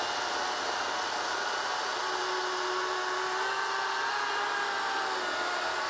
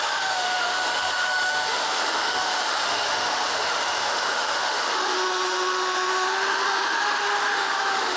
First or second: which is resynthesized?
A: second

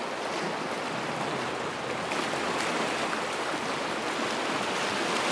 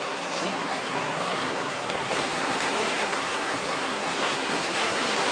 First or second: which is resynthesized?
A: second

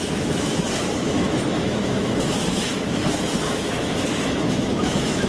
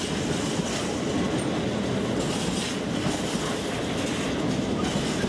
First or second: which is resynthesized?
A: first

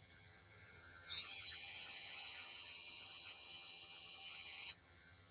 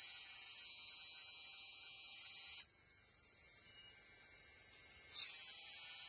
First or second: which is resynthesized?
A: first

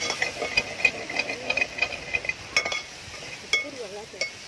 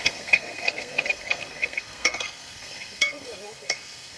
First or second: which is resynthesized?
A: second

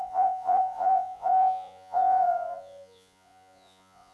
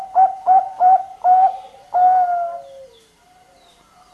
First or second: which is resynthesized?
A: first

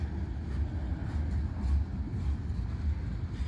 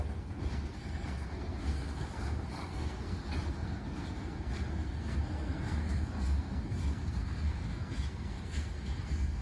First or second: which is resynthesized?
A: second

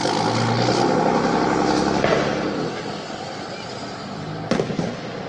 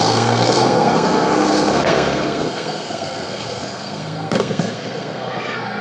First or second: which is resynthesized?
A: second